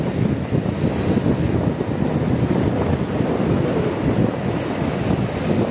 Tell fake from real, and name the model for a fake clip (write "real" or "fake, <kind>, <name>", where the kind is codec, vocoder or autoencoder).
real